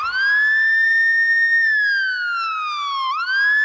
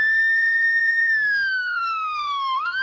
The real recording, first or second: first